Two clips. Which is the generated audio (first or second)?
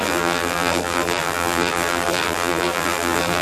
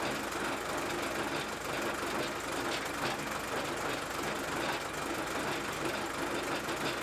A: first